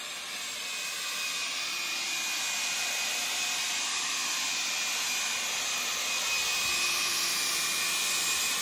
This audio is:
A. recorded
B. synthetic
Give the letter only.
A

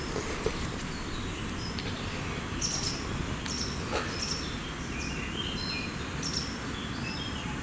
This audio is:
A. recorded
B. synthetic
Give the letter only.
A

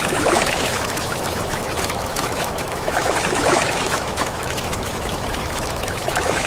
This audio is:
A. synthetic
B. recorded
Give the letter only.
A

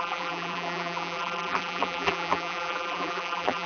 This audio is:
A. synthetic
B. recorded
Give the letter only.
A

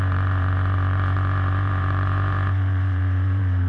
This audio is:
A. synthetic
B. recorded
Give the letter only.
A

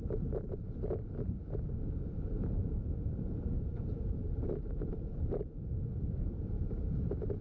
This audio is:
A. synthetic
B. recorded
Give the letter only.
A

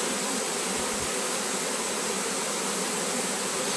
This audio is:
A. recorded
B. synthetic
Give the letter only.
A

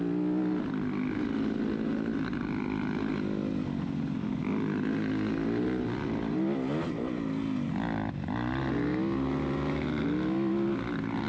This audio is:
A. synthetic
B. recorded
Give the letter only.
B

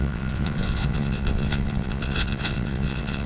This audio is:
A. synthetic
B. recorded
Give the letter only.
A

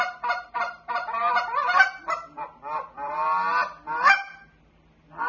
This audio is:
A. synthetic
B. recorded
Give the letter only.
B